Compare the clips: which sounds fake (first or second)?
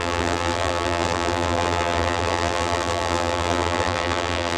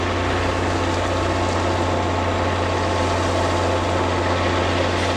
first